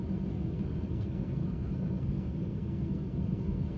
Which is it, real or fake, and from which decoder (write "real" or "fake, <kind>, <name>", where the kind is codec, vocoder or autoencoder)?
fake, codec, SNAC